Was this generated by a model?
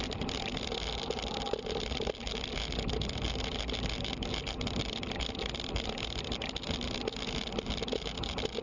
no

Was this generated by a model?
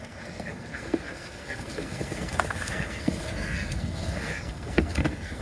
yes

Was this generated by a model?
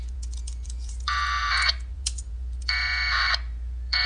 yes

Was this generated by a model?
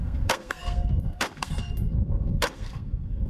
yes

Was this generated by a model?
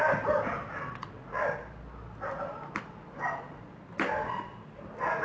no